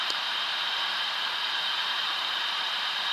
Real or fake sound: fake